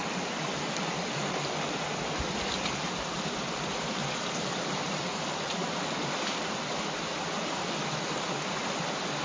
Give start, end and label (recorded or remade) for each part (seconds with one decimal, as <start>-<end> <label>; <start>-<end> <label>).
0.0-1.5 recorded; 1.5-4.0 remade; 4.0-6.1 recorded; 6.1-9.2 remade